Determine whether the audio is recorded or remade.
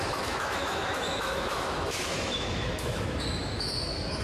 remade